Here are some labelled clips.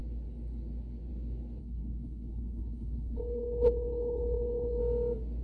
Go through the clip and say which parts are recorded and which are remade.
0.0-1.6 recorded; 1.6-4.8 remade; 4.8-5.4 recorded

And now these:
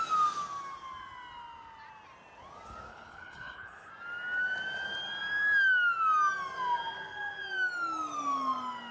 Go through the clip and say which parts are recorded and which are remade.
0.0-2.9 recorded; 2.9-3.9 remade; 3.9-8.9 recorded

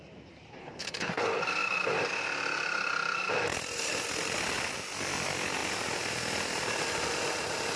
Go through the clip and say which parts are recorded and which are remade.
0.0-0.6 recorded; 0.6-1.1 remade; 1.1-7.8 recorded

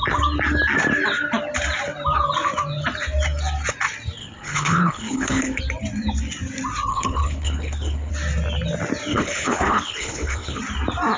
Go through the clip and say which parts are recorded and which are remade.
0.0-4.2 recorded; 4.2-5.6 remade; 5.6-6.9 recorded; 6.9-8.1 remade; 8.1-9.1 recorded; 9.1-10.6 remade; 10.6-11.2 recorded

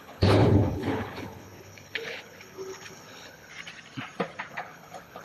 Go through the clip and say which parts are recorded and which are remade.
0.0-3.5 remade; 3.5-4.5 recorded; 4.5-5.2 remade